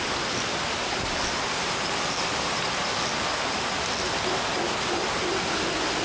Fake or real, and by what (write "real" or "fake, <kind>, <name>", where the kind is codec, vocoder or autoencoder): real